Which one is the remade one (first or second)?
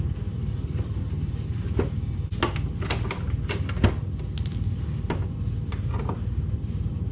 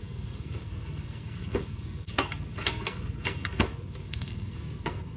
second